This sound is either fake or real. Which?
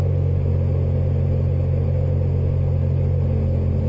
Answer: real